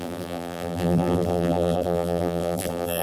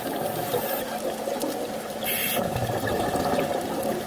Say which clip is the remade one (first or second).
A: first